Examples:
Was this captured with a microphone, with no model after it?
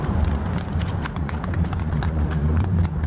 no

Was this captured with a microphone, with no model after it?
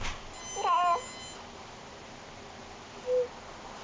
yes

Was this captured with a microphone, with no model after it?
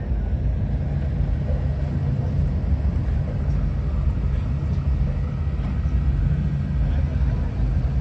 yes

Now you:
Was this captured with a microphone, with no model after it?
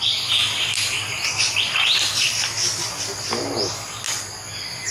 yes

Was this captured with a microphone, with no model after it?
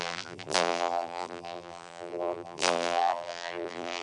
no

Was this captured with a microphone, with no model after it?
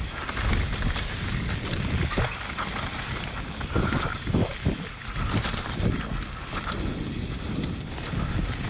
yes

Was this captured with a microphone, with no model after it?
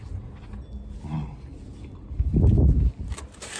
yes